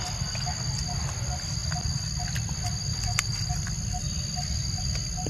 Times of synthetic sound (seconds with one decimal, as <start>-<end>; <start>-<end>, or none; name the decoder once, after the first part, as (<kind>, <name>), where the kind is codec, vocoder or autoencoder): none